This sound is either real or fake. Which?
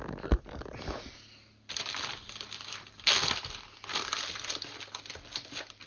real